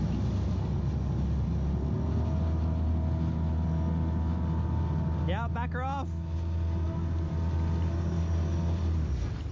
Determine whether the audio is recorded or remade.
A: recorded